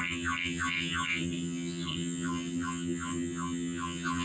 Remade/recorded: remade